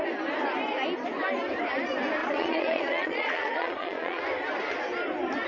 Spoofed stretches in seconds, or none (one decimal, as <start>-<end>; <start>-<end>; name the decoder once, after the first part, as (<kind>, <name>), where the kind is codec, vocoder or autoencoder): 2.2-4.2 (vocoder, Vocos)